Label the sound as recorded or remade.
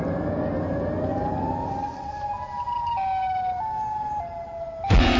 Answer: recorded